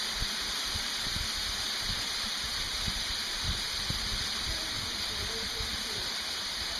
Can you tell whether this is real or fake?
real